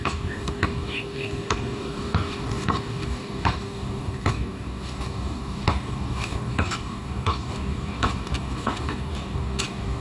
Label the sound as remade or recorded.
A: remade